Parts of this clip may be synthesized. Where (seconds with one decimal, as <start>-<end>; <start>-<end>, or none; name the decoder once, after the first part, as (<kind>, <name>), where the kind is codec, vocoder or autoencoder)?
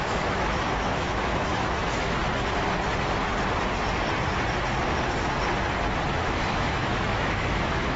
0.0-2.2 (autoencoder, DAC-VAE); 6.2-8.0